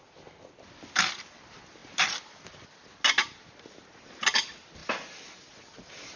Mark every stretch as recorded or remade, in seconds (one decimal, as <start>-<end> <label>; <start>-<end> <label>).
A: 0.0-4.8 recorded; 4.8-6.2 remade